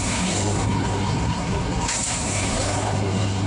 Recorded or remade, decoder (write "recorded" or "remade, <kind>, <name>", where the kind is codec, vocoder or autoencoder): remade, codec, SNAC